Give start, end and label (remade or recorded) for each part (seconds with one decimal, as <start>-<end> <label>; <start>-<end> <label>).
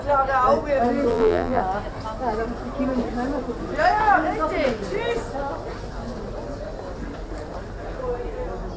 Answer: 0.0-1.1 recorded; 1.1-1.6 remade; 1.6-8.8 recorded